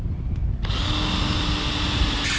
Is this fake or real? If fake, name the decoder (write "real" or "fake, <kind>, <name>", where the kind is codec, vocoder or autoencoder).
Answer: real